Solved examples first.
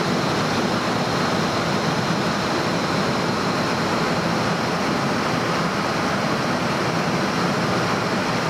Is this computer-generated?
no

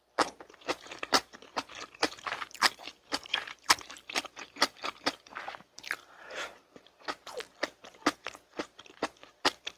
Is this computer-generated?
yes